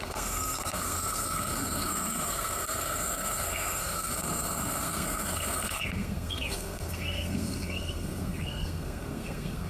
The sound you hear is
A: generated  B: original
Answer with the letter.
A